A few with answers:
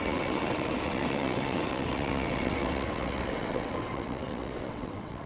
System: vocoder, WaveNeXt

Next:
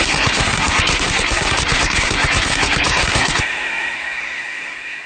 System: codec, SNAC